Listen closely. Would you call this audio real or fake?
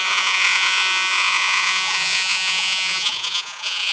fake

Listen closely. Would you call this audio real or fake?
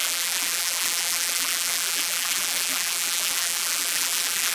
fake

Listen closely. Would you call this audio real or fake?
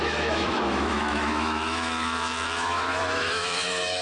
fake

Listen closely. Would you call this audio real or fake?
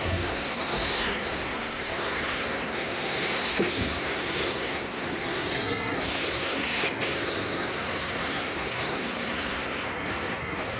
fake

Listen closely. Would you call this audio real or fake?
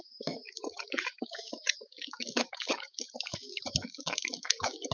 fake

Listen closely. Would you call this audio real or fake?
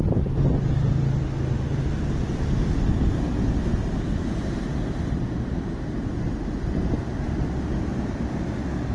real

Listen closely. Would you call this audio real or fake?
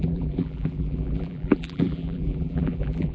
fake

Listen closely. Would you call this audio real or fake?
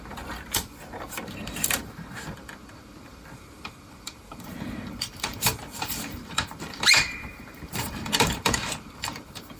fake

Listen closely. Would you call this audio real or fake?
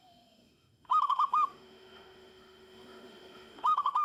fake